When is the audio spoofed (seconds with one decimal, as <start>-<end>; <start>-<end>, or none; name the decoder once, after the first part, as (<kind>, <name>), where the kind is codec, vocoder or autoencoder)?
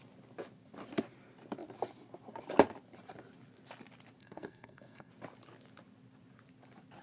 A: 4.2-5.1 (codec, SNAC)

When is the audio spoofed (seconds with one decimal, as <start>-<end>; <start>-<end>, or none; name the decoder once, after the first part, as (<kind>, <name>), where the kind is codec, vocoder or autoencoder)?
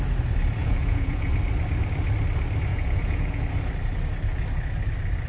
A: 0.6-1.3 (vocoder, Vocos); 2.7-3.4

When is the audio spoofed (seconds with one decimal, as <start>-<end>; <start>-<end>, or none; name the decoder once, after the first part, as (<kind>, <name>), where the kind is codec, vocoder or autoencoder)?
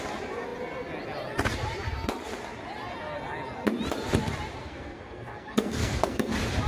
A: 4.6-6.3 (codec, SNAC)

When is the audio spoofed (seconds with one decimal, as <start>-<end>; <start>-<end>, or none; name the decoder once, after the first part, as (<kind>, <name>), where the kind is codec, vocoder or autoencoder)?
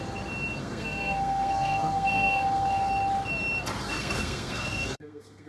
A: 0.6-2.9 (codec, SNAC); 3.8-5.5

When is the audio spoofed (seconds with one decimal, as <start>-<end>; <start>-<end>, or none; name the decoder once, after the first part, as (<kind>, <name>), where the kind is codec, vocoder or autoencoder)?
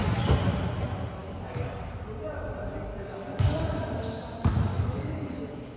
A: 1.2-1.8 (codec, DAC); 2.9-3.6; 4.7-5.8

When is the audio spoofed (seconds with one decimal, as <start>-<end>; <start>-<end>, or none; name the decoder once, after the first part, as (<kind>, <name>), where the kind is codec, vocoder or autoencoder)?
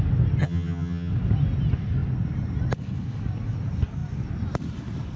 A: 0.4-1.1 (vocoder, HiFi-GAN)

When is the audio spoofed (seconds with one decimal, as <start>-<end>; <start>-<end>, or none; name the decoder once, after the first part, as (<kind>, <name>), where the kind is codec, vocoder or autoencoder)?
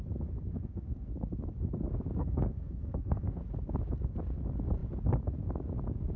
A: 0.5-1.1 (codec, SNAC); 2.2-3.4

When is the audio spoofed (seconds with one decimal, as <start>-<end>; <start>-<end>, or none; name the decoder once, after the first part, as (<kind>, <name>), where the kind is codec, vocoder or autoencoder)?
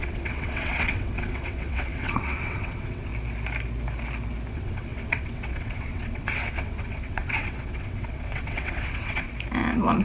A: 0.0-3.1 (vocoder, WaveNeXt); 4.5-9.3